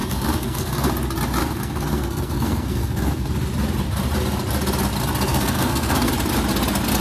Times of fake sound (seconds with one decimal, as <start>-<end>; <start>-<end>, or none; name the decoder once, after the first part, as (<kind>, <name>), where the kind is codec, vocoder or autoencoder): 0.0-0.9 (codec, SNAC); 1.4-3.3; 5.3-6.1